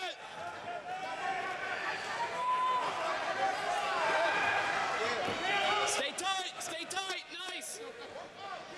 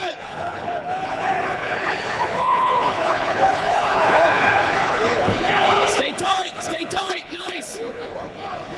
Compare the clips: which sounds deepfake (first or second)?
second